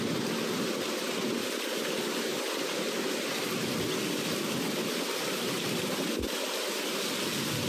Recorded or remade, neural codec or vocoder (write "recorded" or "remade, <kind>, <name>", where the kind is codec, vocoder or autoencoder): recorded